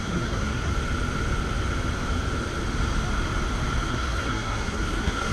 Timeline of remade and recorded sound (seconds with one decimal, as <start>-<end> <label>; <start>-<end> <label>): 0.0-0.7 remade; 0.7-3.9 recorded; 3.9-5.3 remade